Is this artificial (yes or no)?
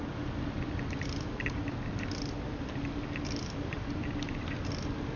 no